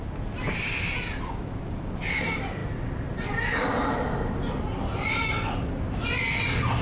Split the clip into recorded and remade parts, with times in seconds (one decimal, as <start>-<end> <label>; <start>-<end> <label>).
0.0-6.8 recorded